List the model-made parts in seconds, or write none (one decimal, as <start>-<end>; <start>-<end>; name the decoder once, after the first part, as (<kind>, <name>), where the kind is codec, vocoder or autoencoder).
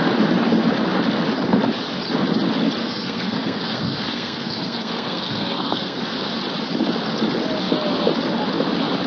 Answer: 2.8-6.0 (codec, SNAC)